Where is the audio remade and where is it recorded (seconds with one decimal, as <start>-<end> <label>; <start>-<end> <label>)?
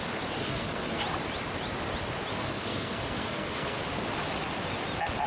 0.0-0.4 recorded; 0.4-1.0 remade; 1.0-2.3 recorded; 2.3-3.8 remade; 3.8-5.3 recorded